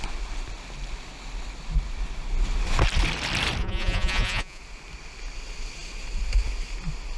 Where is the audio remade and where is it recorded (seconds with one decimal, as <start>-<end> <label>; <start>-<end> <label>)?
0.0-3.6 recorded; 3.6-4.6 remade; 4.6-7.2 recorded